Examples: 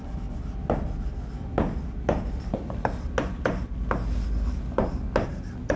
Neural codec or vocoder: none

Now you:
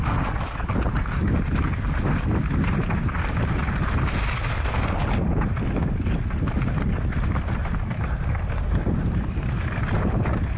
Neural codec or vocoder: none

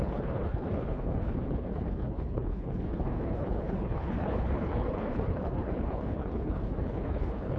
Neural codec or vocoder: codec, HILCodec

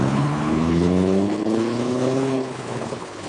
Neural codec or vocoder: codec, HILCodec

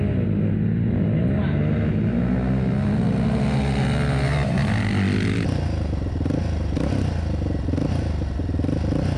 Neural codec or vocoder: none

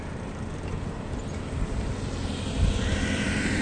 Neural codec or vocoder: vocoder, BigVGAN v2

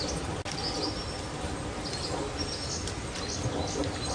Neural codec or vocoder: none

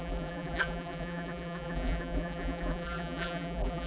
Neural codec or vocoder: vocoder, BigVGAN v2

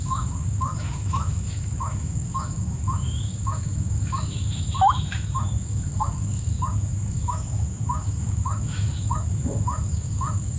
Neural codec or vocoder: autoencoder, DAC-VAE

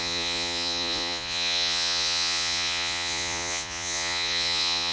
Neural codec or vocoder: vocoder, Vocos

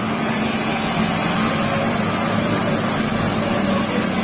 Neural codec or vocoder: none